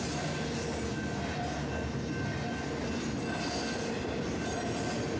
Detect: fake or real real